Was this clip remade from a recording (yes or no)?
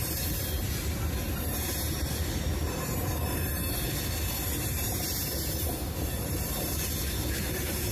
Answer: yes